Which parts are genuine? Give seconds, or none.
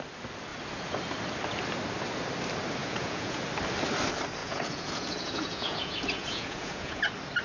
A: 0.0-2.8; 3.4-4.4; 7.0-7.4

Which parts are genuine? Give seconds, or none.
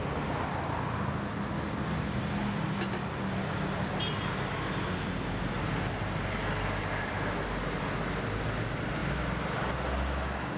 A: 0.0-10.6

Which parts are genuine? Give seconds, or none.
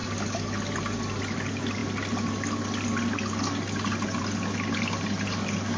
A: 0.0-5.8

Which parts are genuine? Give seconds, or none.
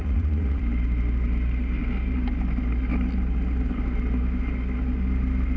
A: 0.6-5.6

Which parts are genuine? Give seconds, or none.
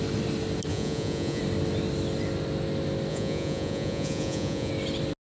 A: 0.0-0.7; 1.4-3.1; 4.7-5.3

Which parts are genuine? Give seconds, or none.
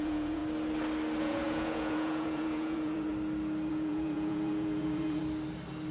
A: 0.4-1.2; 3.1-3.7; 5.2-5.9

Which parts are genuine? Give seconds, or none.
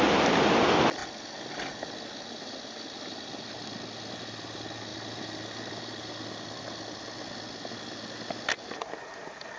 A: 0.0-9.6